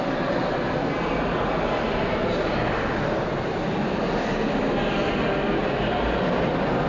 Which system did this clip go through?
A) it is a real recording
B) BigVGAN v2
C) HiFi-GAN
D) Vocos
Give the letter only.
A